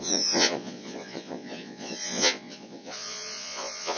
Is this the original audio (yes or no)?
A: no